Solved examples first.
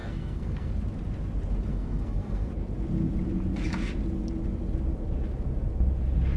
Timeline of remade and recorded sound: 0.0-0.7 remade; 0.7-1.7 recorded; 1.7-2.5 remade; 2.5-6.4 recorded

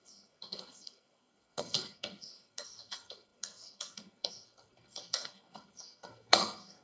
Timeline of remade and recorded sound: 0.0-6.8 remade

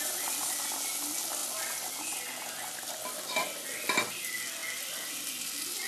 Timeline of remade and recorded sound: 0.0-5.9 recorded

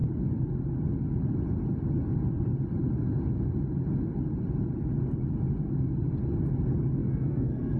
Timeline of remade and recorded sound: 0.0-7.0 recorded; 7.0-7.8 remade

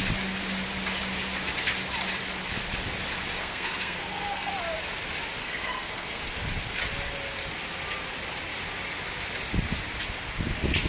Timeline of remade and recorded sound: 0.0-3.4 recorded; 3.4-4.5 remade; 4.5-5.4 recorded; 5.4-6.2 remade; 6.2-10.9 recorded